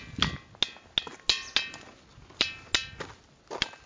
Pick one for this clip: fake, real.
real